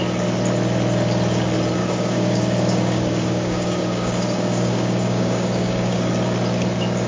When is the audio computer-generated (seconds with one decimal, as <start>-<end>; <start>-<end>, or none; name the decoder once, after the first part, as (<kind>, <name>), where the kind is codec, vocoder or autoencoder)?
1.8-6.1 (codec, DAC)